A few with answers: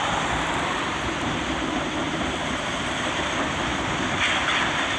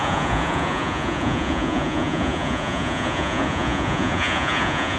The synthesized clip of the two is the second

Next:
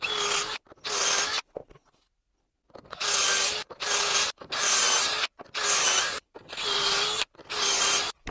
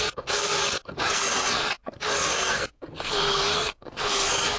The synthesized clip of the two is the second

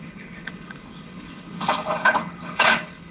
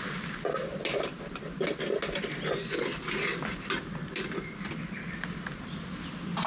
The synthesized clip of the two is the first